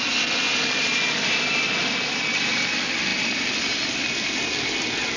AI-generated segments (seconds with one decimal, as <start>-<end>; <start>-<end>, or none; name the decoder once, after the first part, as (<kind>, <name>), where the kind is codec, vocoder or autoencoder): none